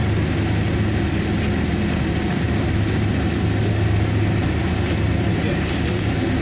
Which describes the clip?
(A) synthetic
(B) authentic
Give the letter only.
B